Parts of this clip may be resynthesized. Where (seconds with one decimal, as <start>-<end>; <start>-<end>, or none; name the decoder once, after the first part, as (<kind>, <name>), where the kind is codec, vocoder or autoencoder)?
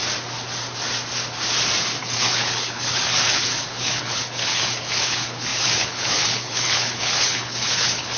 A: 2.0-8.2 (codec, HILCodec)